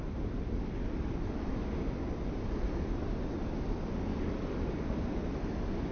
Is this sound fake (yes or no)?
no